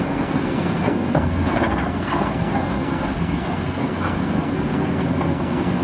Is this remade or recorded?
remade